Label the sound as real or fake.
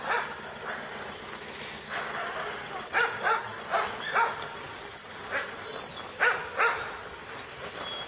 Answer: real